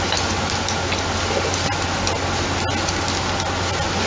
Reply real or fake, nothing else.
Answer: real